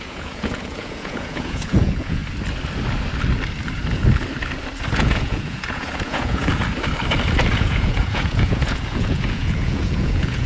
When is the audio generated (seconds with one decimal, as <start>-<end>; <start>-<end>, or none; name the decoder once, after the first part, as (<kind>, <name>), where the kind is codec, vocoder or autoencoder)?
0.0-2.2 (vocoder, Vocos); 4.9-6.6; 7.5-10.5